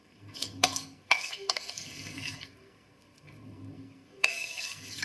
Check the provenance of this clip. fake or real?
fake